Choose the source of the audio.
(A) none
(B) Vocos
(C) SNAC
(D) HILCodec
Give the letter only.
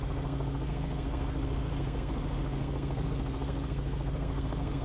C